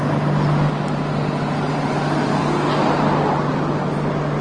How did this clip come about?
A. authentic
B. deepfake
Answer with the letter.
A